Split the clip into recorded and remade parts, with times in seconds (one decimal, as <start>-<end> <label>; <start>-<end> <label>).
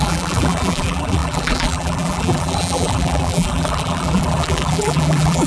0.0-5.5 remade